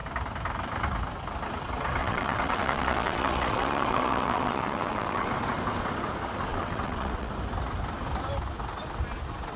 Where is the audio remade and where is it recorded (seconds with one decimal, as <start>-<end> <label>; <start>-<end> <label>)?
0.0-2.0 recorded; 2.0-5.3 remade; 5.3-6.5 recorded; 6.5-7.3 remade; 7.3-9.6 recorded